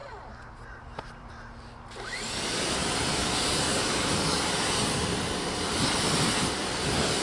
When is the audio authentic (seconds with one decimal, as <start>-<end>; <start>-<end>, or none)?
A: 0.0-0.8